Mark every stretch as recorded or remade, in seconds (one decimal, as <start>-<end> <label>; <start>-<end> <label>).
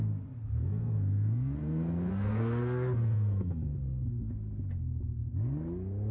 0.0-0.6 recorded; 0.6-4.3 remade; 4.3-6.1 recorded